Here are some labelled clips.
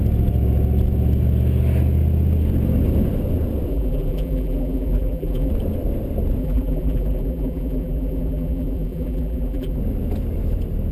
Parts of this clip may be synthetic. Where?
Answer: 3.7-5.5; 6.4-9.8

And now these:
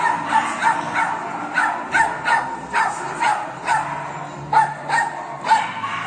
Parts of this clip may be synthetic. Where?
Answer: none

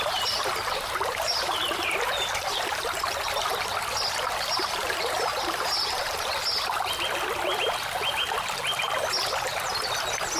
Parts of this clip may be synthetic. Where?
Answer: 0.0-3.5; 4.2-6.3

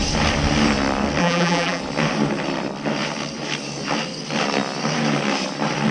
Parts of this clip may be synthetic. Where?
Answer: 1.2-1.8

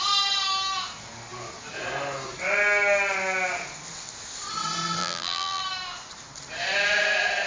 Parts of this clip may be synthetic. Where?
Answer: 5.0-5.6